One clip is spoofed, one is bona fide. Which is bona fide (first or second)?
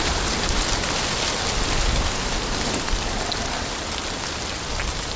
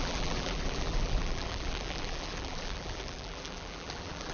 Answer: first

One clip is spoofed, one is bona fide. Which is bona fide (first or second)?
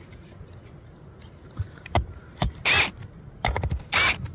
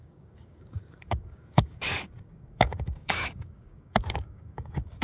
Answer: first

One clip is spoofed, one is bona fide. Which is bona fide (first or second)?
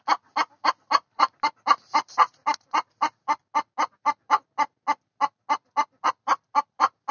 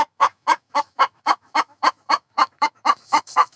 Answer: first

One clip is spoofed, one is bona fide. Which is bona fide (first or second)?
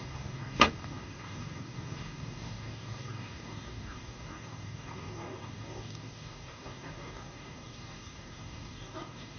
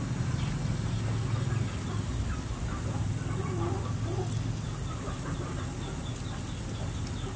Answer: second